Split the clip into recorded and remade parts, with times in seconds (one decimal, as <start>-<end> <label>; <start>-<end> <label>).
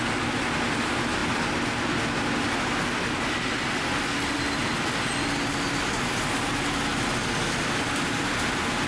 0.0-8.9 recorded